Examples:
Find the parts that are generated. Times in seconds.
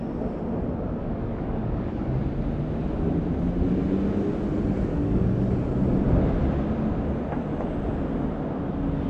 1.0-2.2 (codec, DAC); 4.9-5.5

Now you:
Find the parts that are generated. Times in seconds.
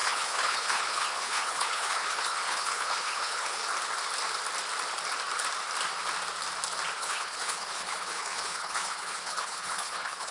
0.0-3.6 (codec, HILCodec); 7.0-10.3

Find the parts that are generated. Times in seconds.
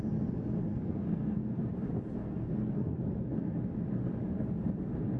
0.7-1.7 (codec, SNAC); 2.2-3.6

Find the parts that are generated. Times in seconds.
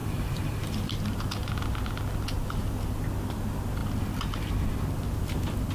0.0-0.9 (vocoder, BigVGAN v2)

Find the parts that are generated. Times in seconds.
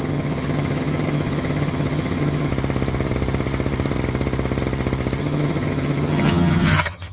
0.0-2.5 (vocoder, HiFi-GAN); 5.2-7.1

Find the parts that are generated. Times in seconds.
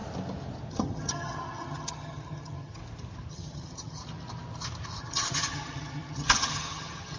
0.7-2.8 (vocoder, HiFi-GAN); 3.3-4.0; 5.0-7.2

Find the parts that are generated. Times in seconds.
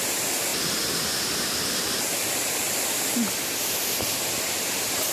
none